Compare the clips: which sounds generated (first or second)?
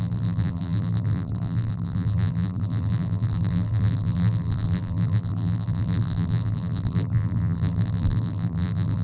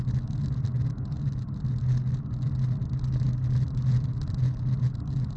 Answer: first